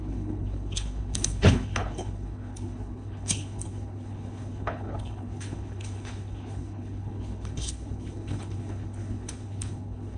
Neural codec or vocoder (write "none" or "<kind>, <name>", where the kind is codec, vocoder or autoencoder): codec, HILCodec